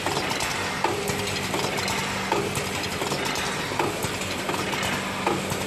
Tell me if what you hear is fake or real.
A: real